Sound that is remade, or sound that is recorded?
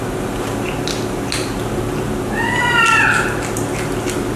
recorded